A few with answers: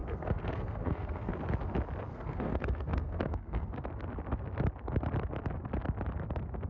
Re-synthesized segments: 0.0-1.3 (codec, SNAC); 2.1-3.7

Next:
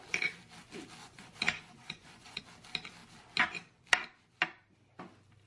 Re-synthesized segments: 1.0-2.4 (vocoder, Vocos)

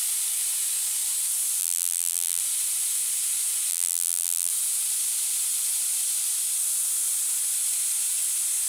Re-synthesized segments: 1.6-2.4 (vocoder, BigVGAN v2); 3.7-4.5